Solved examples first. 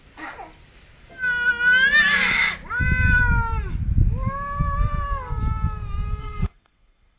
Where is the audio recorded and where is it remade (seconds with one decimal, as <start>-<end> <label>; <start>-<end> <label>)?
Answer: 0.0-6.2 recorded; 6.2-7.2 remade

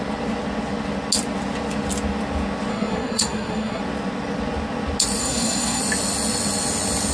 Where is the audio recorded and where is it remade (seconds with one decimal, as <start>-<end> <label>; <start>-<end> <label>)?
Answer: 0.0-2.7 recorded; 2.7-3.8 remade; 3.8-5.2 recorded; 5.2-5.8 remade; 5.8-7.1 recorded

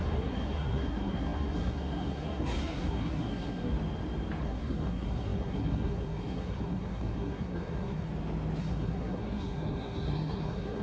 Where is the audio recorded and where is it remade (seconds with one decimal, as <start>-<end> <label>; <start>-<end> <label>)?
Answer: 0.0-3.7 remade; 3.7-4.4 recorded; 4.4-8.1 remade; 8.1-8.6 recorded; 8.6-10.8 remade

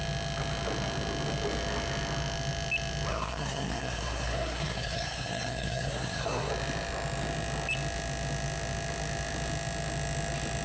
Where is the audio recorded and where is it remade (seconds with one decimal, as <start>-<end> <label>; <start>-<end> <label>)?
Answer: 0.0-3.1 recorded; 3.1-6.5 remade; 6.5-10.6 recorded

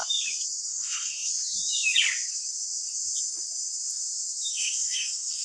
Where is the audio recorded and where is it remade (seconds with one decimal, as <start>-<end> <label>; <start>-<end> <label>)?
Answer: 0.0-0.7 recorded; 0.7-1.3 remade; 1.3-4.5 recorded; 4.5-5.4 remade